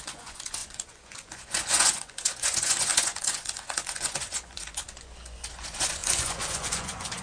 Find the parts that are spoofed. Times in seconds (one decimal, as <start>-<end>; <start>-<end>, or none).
0.0-7.2